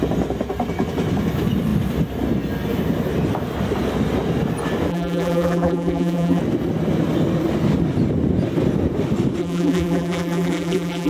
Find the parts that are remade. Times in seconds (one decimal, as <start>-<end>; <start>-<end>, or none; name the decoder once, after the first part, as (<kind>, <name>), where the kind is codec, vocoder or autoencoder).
4.9-6.4 (vocoder, BigVGAN v2); 9.4-11.1